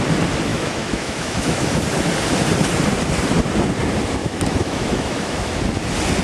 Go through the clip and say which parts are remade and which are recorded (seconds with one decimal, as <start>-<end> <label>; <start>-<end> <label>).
0.0-0.5 recorded; 0.5-1.8 remade; 1.8-4.2 recorded; 4.2-5.5 remade; 5.5-6.2 recorded